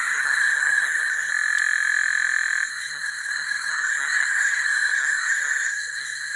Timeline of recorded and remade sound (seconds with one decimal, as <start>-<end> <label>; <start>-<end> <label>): 0.0-1.3 remade; 1.3-2.7 recorded; 2.7-6.4 remade